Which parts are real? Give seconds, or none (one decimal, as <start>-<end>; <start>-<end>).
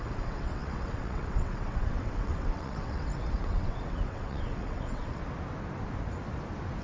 5.2-6.8